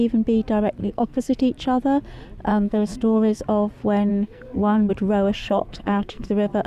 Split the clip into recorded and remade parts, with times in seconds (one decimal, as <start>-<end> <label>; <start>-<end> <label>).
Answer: 0.0-0.8 recorded; 0.8-1.4 remade; 1.4-2.5 recorded; 2.5-3.4 remade; 3.4-4.1 recorded; 4.1-4.9 remade; 4.9-5.4 recorded; 5.4-6.3 remade; 6.3-6.7 recorded